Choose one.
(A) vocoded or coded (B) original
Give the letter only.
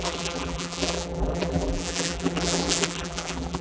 A